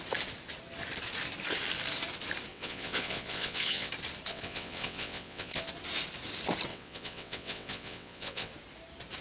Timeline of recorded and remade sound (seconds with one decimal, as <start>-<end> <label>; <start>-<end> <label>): 0.0-2.5 recorded; 2.5-3.9 remade; 3.9-4.3 recorded; 4.3-5.6 remade; 5.6-6.7 recorded; 6.7-8.5 remade; 8.5-9.2 recorded